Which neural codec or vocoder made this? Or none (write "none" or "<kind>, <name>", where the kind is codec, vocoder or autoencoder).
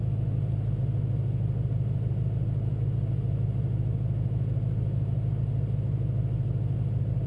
none